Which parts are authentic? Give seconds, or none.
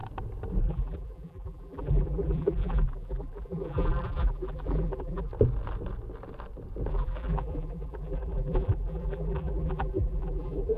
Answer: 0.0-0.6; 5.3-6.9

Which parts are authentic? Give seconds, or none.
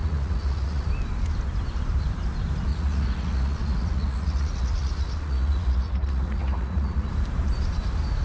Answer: 0.9-2.7; 7.1-8.2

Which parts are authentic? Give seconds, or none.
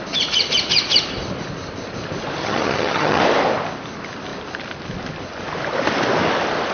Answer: 0.0-2.4; 3.2-6.7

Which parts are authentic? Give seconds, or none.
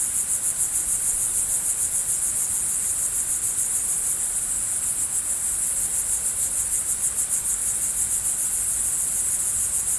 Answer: 0.0-2.9; 4.6-5.9; 6.9-10.0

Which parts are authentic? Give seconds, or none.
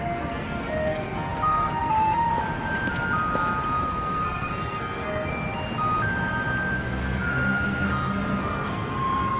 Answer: 2.3-3.8; 5.3-6.8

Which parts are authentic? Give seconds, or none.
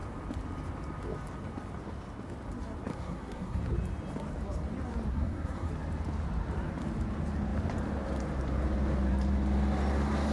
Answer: 0.0-2.9; 3.6-5.1; 5.7-10.3